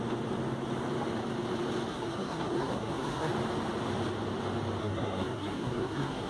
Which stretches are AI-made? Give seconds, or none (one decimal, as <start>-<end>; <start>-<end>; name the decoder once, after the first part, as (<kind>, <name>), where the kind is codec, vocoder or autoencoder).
1.9-3.3 (codec, SNAC); 4.8-6.3